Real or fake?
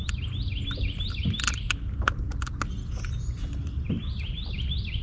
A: real